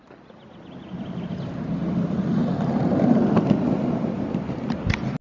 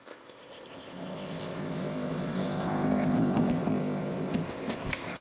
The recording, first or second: first